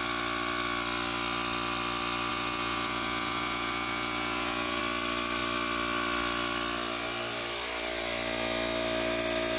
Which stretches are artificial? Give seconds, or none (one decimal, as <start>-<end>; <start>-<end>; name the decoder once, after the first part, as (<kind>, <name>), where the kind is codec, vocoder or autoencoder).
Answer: 2.3-4.8 (vocoder, Vocos)